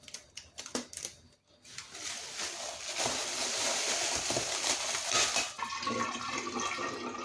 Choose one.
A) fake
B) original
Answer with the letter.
B